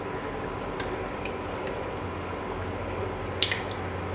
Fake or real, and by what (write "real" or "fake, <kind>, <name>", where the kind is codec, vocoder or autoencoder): fake, vocoder, BigVGAN v2